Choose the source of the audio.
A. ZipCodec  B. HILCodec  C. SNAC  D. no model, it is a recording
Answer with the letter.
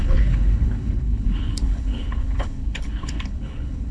B